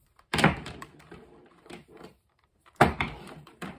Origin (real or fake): fake